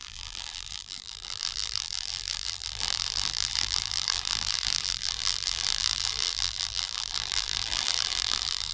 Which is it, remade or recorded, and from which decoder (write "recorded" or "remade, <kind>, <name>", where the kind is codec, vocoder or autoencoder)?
remade, vocoder, BigVGAN v2